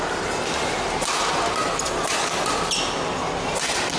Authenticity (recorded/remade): recorded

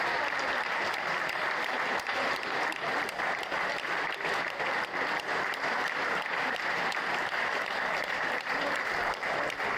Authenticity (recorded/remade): remade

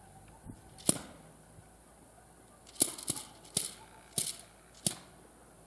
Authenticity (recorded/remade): recorded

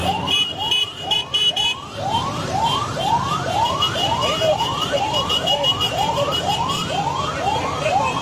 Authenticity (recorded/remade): remade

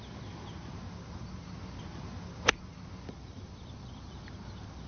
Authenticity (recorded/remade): recorded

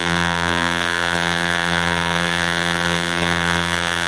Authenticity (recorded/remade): remade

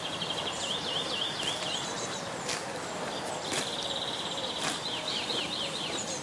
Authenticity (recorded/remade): remade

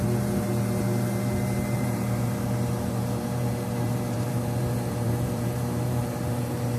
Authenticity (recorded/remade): remade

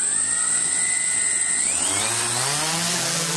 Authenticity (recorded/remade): recorded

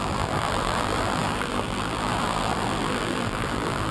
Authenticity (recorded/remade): remade